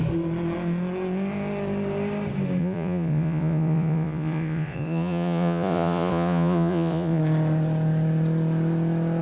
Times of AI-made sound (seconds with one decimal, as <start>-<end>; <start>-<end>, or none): 2.6-7.2